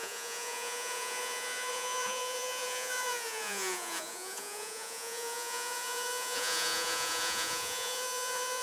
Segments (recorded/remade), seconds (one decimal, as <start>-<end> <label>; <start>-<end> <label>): 0.0-8.6 remade